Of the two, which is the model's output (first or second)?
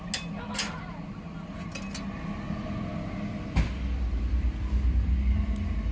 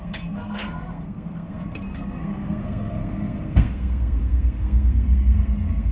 second